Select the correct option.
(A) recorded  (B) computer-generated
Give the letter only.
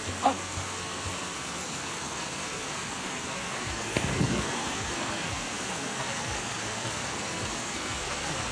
B